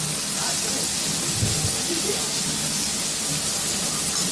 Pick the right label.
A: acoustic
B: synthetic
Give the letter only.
A